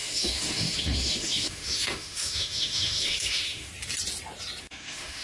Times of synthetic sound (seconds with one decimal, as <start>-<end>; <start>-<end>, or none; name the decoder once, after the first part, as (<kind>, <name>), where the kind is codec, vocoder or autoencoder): 0.0-3.7 (autoencoder, DAC-VAE); 4.6-5.2